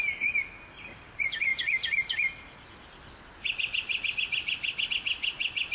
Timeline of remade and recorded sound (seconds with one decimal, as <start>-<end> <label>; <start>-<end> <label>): 0.0-5.7 recorded